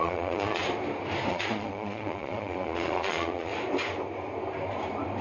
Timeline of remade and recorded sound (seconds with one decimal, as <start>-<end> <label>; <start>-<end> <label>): 0.0-0.6 remade; 0.6-1.3 recorded; 1.3-3.5 remade; 3.5-5.2 recorded